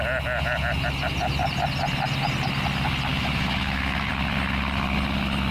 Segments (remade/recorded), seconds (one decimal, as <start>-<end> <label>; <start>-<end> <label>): 0.0-3.1 recorded; 3.1-4.1 remade; 4.1-5.5 recorded